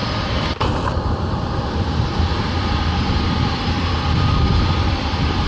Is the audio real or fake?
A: fake